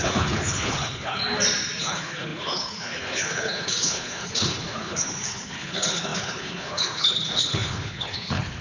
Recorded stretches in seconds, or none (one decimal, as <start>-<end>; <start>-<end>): 1.2-1.8